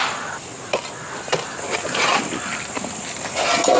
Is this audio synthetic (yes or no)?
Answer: no